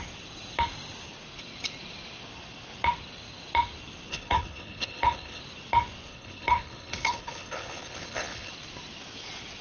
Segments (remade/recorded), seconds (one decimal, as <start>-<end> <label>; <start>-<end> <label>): 0.0-4.1 recorded; 4.1-5.4 remade; 5.4-6.1 recorded; 6.1-8.5 remade; 8.5-9.6 recorded